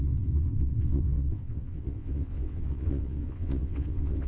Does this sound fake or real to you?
fake